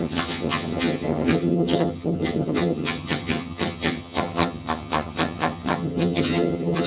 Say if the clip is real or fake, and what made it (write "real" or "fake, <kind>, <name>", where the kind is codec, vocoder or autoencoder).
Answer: fake, vocoder, HiFi-GAN